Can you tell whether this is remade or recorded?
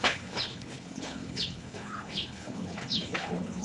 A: remade